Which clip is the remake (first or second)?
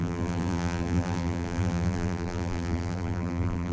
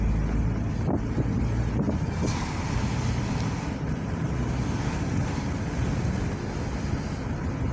first